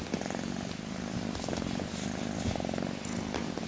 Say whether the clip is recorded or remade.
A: recorded